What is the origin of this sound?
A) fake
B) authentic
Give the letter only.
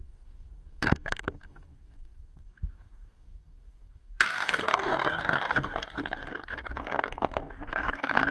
A